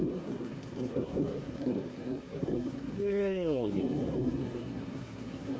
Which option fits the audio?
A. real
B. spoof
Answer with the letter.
B